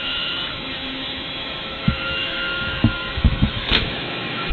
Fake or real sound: fake